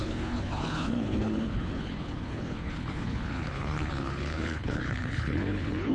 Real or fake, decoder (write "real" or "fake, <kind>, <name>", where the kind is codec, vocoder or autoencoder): fake, codec, HILCodec